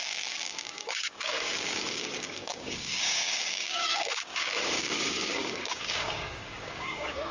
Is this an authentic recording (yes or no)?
no